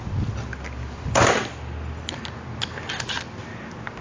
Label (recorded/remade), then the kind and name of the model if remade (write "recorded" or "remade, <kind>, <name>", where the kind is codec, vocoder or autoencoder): recorded